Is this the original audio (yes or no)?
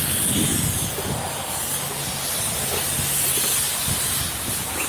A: yes